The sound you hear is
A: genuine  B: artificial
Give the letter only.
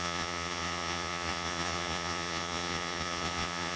B